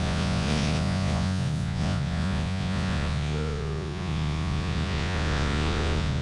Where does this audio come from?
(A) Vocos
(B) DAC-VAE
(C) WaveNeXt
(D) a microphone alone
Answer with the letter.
A